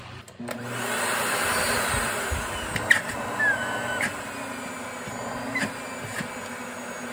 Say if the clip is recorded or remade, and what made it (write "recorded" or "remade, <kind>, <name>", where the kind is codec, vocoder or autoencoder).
recorded